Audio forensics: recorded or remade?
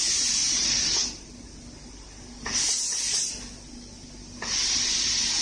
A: recorded